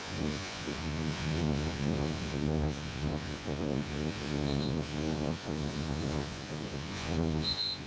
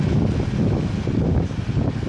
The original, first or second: second